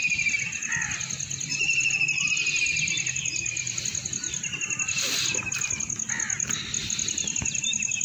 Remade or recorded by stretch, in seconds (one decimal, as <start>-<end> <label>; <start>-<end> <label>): 0.0-8.0 recorded